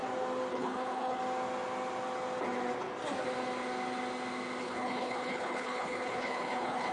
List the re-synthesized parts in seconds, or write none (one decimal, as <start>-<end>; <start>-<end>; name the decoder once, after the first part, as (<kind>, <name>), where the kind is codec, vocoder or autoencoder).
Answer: 0.5-1.2 (codec, HILCodec); 4.6-6.9